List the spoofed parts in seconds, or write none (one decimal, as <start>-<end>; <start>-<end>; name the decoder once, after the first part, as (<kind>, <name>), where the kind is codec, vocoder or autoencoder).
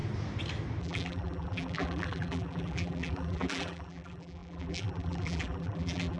0.8-6.2 (vocoder, BigVGAN v2)